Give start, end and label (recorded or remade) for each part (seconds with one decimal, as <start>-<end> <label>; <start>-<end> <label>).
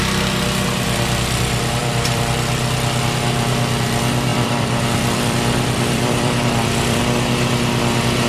0.0-1.8 recorded; 1.8-3.0 remade; 3.0-4.3 recorded; 4.3-7.0 remade; 7.0-8.3 recorded